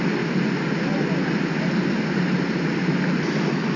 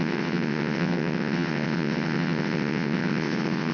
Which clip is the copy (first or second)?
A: second